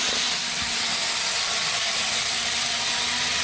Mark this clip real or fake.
real